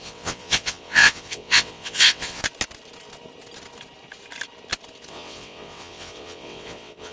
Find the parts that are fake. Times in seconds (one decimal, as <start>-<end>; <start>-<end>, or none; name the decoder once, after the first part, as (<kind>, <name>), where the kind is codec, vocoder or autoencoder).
0.0-2.4 (vocoder, WaveNeXt); 5.1-7.1